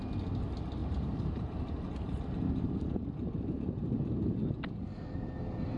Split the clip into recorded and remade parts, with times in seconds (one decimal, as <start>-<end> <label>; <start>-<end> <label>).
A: 0.0-0.8 recorded; 0.8-4.3 remade; 4.3-5.8 recorded